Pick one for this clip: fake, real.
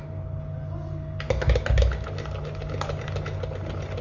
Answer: real